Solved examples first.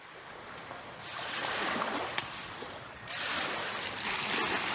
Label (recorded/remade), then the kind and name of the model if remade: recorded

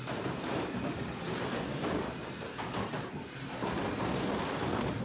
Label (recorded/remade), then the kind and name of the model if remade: recorded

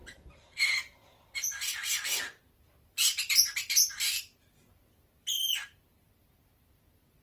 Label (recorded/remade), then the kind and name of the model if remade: remade, vocoder, BigVGAN v2